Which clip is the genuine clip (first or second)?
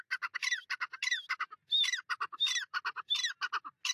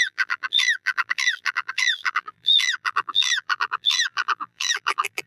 first